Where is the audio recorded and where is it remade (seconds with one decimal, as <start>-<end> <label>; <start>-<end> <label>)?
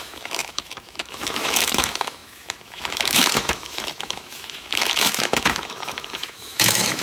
0.0-7.0 remade